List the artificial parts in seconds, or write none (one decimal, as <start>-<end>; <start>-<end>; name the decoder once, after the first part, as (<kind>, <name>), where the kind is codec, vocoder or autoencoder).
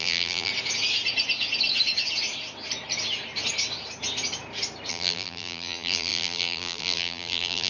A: 0.0-0.5 (vocoder, BigVGAN v2); 4.9-7.7